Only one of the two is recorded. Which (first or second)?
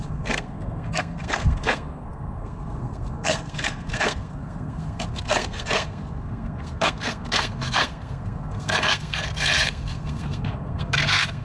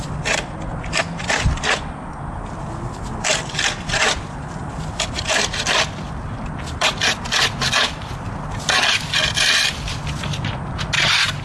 second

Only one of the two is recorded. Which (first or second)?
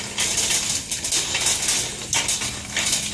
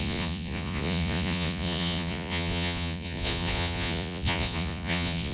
first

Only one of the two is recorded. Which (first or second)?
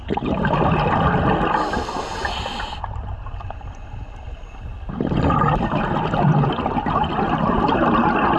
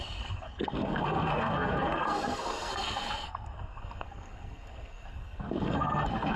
first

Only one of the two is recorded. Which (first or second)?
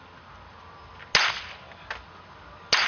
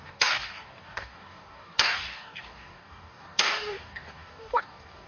first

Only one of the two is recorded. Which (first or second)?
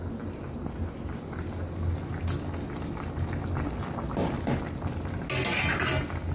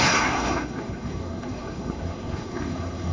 first